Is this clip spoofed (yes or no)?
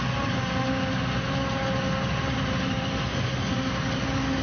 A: no